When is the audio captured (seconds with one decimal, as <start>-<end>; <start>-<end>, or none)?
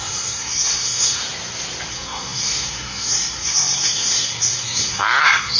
1.2-1.9